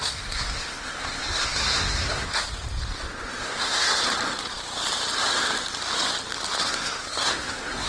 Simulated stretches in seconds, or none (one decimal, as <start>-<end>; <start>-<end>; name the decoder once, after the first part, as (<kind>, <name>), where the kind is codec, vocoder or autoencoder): 0.0-2.3 (codec, SNAC); 3.4-4.0; 6.6-7.9